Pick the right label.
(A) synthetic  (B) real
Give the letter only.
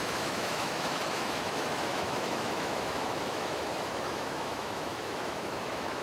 A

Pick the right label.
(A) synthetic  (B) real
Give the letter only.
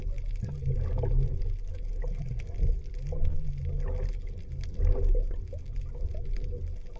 B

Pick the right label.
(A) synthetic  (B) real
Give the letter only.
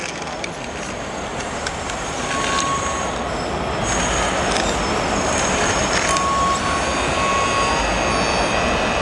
B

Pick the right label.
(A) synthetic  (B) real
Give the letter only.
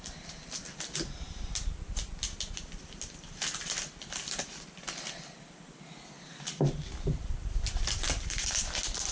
A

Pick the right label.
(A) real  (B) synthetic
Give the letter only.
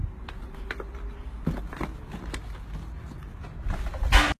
A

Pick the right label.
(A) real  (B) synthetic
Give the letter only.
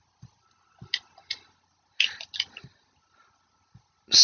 A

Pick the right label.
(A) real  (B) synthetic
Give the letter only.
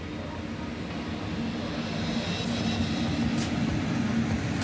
A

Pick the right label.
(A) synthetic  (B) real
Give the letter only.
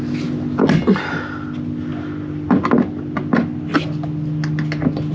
B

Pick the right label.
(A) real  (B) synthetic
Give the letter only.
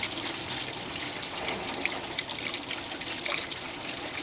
A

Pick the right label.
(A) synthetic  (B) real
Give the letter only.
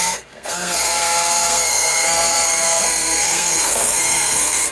A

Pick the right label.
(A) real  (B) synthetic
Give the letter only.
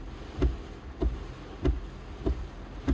A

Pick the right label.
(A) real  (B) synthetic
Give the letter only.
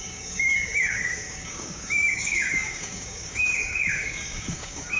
B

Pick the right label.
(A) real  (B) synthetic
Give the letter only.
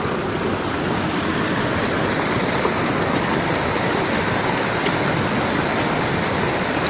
A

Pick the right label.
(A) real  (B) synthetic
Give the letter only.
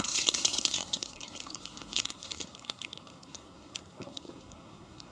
B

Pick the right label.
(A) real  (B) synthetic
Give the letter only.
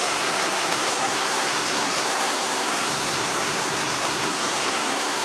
B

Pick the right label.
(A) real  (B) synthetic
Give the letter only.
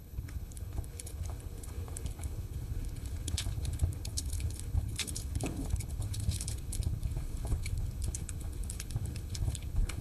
B